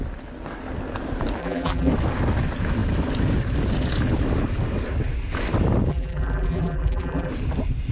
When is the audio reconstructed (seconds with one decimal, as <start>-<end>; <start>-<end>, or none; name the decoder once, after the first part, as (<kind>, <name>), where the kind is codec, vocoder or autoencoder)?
1.4-1.9 (vocoder, BigVGAN v2); 5.9-7.3